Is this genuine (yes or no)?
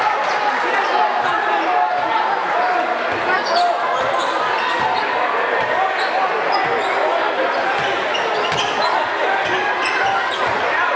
yes